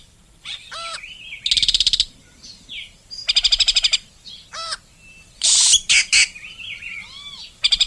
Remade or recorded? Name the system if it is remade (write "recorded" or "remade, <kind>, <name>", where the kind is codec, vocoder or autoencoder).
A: recorded